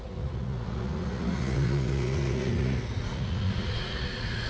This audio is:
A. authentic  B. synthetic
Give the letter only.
B